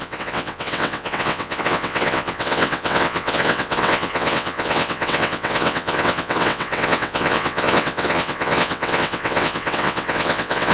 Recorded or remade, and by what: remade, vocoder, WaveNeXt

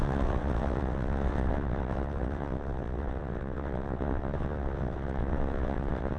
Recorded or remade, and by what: remade, vocoder, WaveNeXt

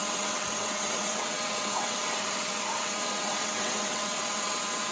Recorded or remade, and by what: remade, vocoder, WaveNeXt